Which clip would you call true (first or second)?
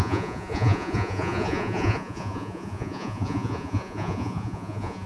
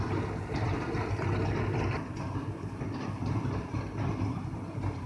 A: second